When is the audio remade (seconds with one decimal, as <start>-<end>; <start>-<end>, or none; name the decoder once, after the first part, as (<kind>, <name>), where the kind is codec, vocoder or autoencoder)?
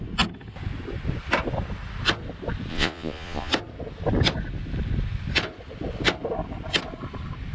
2.7-3.5 (vocoder, Vocos)